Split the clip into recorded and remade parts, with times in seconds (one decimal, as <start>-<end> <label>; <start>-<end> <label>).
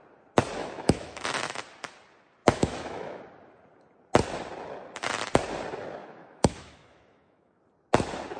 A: 0.0-0.6 recorded; 0.6-1.6 remade; 1.6-2.4 recorded; 2.4-3.2 remade; 3.2-6.0 recorded; 6.0-7.6 remade; 7.6-8.4 recorded